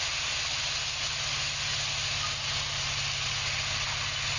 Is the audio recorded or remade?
recorded